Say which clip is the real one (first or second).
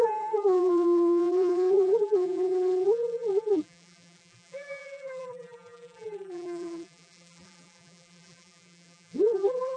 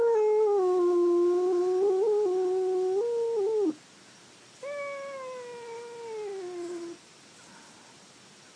second